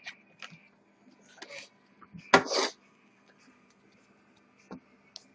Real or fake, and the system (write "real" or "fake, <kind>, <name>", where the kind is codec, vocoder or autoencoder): real